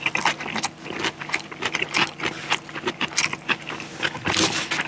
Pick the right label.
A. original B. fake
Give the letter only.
A